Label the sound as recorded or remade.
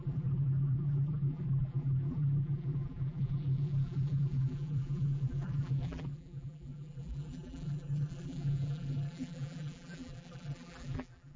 remade